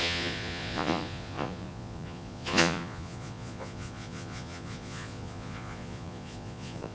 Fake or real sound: fake